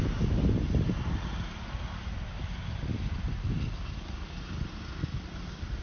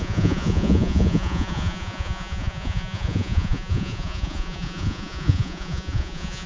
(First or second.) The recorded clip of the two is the first